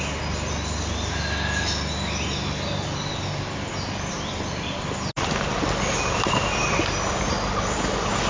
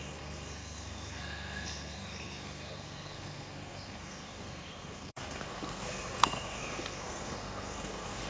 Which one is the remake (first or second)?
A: second